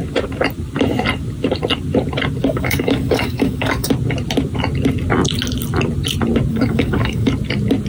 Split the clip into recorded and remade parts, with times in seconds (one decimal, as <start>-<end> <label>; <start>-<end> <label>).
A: 0.0-2.4 recorded; 2.4-3.9 remade; 3.9-6.5 recorded; 6.5-7.3 remade; 7.3-7.9 recorded